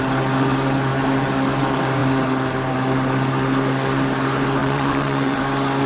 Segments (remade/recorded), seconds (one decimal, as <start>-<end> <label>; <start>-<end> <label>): 0.0-4.6 recorded; 4.6-5.4 remade; 5.4-5.9 recorded